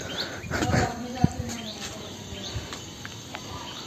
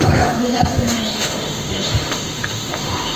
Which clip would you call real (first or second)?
first